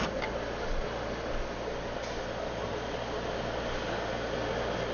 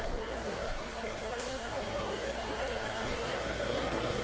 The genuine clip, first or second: first